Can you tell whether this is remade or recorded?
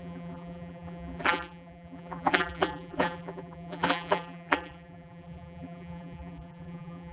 remade